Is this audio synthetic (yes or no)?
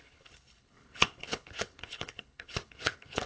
yes